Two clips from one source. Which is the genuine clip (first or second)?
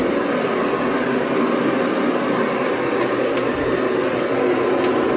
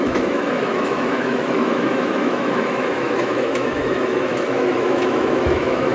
first